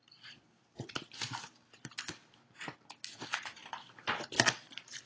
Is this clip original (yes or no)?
yes